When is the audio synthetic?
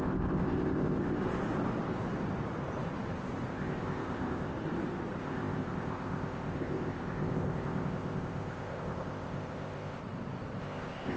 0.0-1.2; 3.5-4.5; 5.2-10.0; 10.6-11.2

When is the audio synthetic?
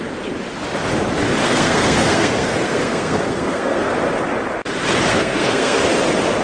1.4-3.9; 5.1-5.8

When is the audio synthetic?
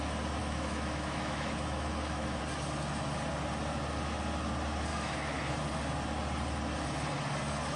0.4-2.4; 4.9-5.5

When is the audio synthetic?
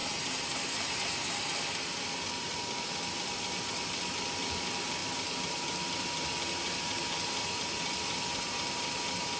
none